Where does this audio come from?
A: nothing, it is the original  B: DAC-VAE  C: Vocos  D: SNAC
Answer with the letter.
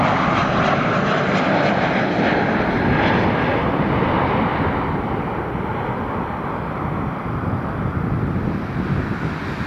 A